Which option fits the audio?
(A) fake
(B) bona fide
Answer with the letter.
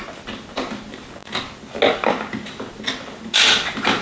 B